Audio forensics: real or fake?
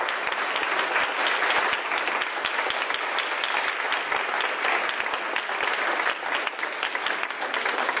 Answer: real